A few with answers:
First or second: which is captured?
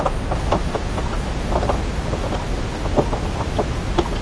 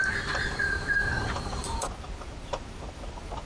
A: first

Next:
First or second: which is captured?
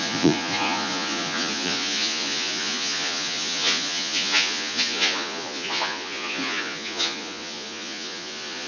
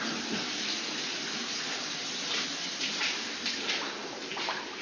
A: second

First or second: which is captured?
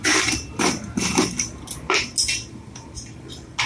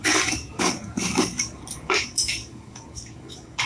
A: first